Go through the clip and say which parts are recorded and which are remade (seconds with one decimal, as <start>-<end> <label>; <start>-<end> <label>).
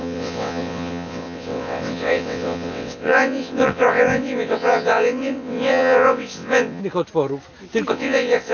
0.0-6.8 remade; 6.8-7.9 recorded; 7.9-8.5 remade